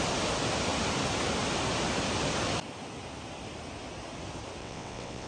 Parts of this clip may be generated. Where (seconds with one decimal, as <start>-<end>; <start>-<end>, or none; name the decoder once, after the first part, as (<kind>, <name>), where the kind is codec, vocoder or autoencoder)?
4.6-5.3 (vocoder, WaveNeXt)